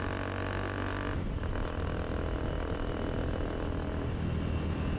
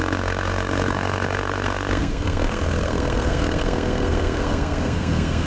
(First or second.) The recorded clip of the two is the first